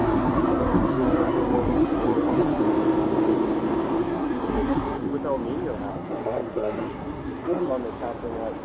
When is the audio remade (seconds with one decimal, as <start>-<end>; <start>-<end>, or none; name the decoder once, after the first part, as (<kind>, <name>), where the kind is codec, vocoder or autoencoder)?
0.0-2.6 (codec, SNAC); 4.0-5.1; 5.9-7.7